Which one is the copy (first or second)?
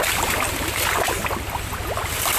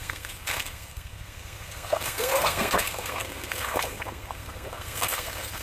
second